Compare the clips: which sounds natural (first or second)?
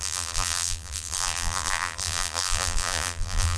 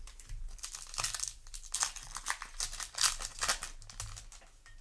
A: second